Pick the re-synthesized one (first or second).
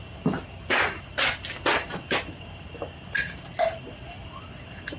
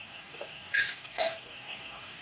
second